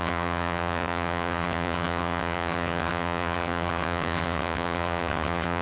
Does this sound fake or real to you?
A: fake